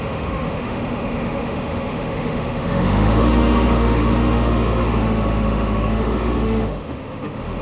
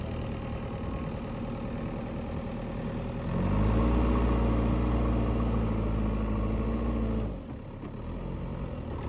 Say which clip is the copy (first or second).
first